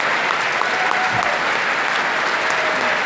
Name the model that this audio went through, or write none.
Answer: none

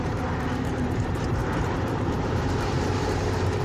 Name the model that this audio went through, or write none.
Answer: vocoder, BigVGAN v2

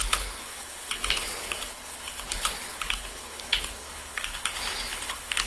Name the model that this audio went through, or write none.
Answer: codec, HILCodec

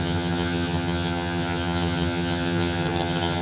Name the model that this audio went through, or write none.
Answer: vocoder, HiFi-GAN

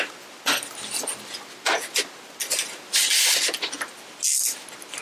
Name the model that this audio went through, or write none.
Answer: none